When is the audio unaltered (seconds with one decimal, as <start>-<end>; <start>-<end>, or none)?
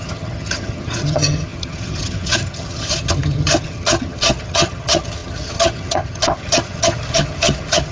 none